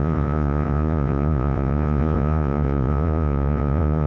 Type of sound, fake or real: fake